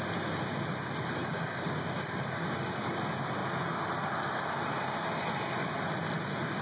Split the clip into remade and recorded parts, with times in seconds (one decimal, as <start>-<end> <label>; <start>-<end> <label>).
0.0-1.2 recorded; 1.2-2.9 remade; 2.9-6.6 recorded